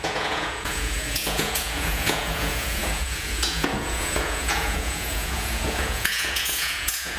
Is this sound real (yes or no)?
no